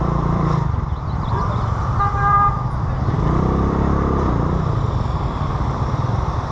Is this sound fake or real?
fake